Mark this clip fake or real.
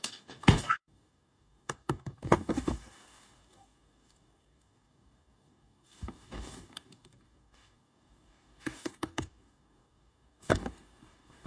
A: fake